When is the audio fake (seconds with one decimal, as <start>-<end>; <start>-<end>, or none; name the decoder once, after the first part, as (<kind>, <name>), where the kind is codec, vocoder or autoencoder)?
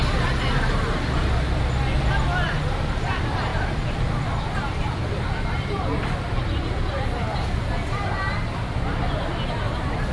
none